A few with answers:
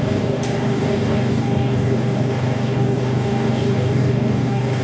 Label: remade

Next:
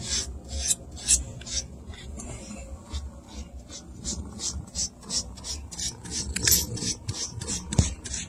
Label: recorded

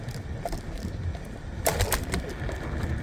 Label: recorded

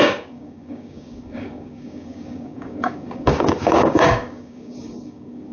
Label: remade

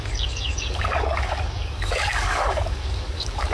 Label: remade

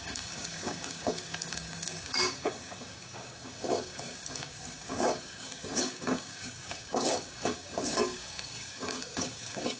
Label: remade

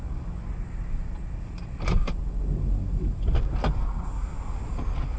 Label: recorded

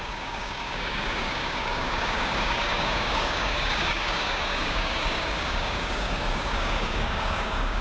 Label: remade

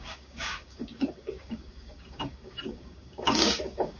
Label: remade